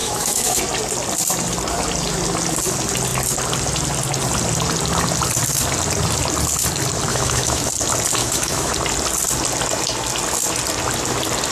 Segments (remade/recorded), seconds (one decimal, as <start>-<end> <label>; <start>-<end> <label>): 0.0-0.6 remade; 0.6-7.1 recorded; 7.1-7.7 remade; 7.7-8.2 recorded; 8.2-8.7 remade; 8.7-11.5 recorded